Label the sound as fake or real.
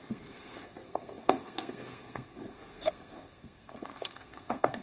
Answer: fake